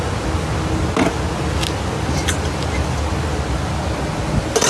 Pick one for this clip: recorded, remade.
recorded